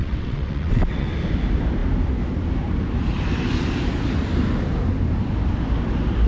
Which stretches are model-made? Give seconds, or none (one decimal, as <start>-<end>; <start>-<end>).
0.0-1.1